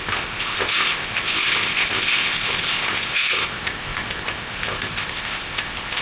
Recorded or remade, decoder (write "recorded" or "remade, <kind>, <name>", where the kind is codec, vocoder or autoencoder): remade, codec, ZipCodec